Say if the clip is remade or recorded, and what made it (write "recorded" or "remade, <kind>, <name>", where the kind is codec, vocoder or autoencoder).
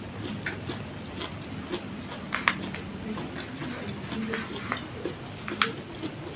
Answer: recorded